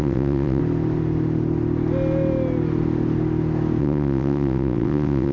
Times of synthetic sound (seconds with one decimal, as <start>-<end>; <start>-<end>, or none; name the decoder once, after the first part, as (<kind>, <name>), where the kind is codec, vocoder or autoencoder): 0.0-0.6 (vocoder, WaveNeXt); 3.8-5.3